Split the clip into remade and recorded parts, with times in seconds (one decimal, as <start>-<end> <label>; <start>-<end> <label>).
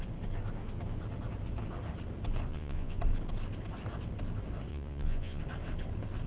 0.0-2.5 recorded; 2.5-3.0 remade; 3.0-4.7 recorded; 4.7-5.4 remade; 5.4-6.3 recorded